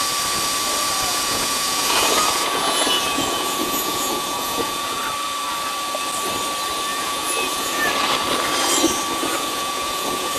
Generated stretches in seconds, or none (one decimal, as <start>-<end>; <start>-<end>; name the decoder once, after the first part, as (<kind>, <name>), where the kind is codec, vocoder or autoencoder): 1.1-5.0 (vocoder, Vocos); 6.9-7.9; 9.2-10.4